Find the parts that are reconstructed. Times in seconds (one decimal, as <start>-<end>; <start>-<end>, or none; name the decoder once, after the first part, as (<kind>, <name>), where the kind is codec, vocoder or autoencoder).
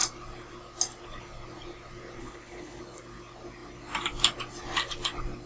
2.2-2.8 (codec, HILCodec)